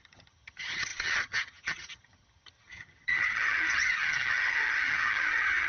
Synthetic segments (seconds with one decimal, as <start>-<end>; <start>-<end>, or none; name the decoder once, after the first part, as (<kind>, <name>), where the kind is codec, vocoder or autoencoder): 0.0-5.7 (vocoder, HiFi-GAN)